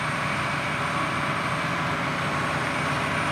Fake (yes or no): no